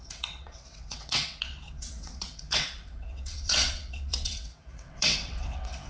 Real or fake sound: fake